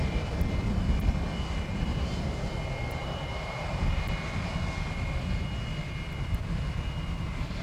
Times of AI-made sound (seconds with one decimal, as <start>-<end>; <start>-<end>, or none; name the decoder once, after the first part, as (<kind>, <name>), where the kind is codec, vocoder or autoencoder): 1.9-2.6 (vocoder, BigVGAN v2); 3.0-4.0